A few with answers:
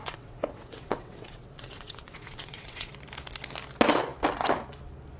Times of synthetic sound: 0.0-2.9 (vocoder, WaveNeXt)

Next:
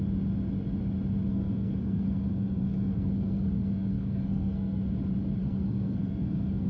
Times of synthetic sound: 1.3-4.8 (codec, SNAC); 5.4-6.7

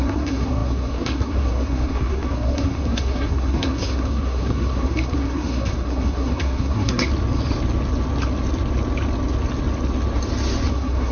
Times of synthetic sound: 0.0-7.1 (codec, SNAC); 10.7-11.1

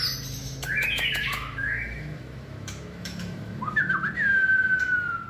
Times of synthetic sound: 0.4-3.6 (autoencoder, DAC-VAE)

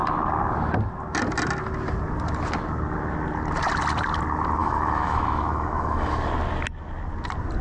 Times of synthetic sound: 4.6-6.1 (autoencoder, DAC-VAE)

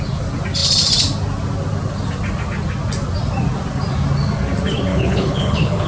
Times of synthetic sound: 4.9-5.9 (codec, HILCodec)